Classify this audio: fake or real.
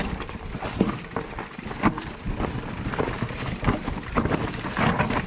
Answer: fake